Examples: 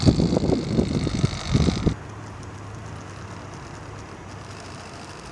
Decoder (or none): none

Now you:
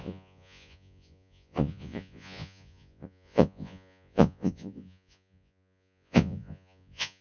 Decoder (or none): vocoder, Vocos